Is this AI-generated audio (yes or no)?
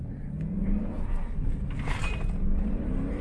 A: no